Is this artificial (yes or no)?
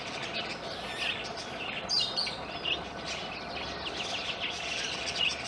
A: no